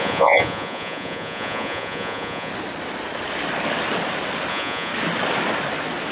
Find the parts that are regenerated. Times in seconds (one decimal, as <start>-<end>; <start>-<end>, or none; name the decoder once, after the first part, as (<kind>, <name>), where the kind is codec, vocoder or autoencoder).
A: 0.0-2.5 (vocoder, Vocos); 4.5-4.9